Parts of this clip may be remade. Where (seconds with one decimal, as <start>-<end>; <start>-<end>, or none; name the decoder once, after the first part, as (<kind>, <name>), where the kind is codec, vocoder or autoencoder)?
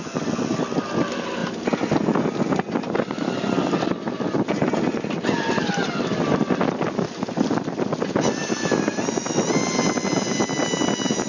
none